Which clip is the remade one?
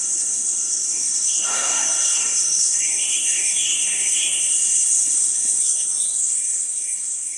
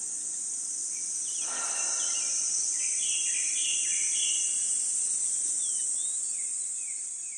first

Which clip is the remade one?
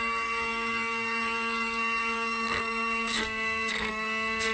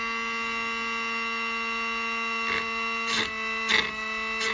first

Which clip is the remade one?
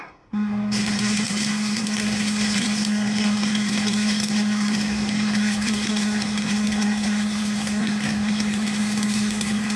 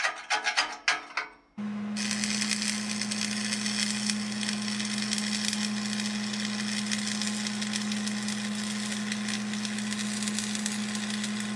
first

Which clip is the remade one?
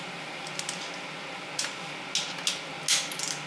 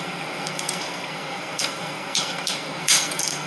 second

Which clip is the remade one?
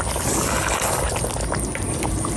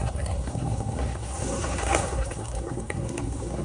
second